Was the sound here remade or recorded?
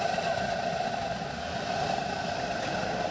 recorded